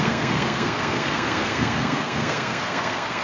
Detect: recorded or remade remade